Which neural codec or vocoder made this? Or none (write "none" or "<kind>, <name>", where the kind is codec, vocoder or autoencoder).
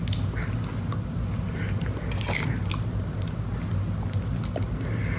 none